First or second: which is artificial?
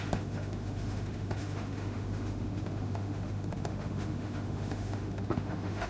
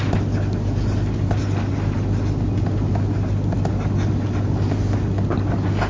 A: first